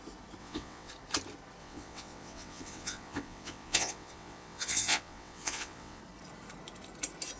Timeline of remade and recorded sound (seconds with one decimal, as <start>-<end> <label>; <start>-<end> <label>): 0.0-0.4 recorded; 0.4-0.9 remade; 0.9-1.6 recorded; 1.6-6.0 remade; 6.0-7.4 recorded